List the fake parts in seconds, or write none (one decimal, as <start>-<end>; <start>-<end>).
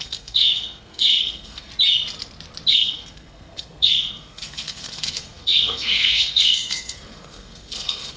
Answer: 0.0-1.7; 2.7-8.2